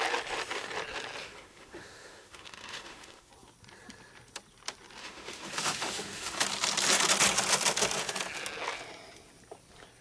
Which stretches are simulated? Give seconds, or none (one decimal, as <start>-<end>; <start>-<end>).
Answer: 1.2-3.3; 5.0-6.4